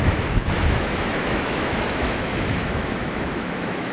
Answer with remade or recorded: remade